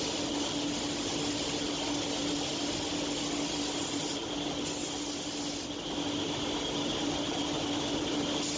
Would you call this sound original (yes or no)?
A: yes